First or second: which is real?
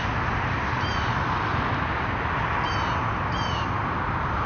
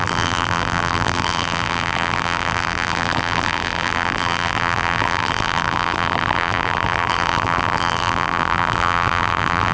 first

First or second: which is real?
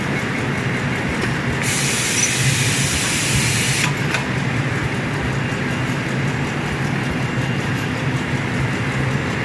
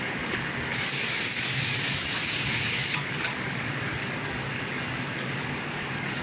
first